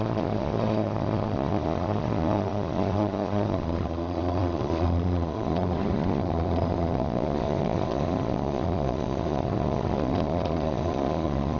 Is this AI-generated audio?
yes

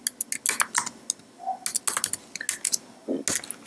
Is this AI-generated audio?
no